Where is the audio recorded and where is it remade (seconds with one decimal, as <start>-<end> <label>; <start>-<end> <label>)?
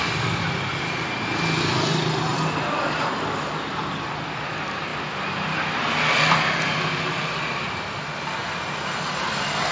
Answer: 0.0-9.7 recorded